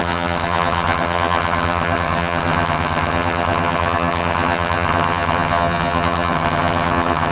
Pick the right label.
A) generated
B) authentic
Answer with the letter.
A